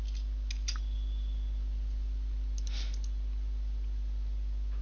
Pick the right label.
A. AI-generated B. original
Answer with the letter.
B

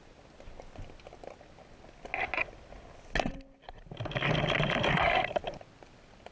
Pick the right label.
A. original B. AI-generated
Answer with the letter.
A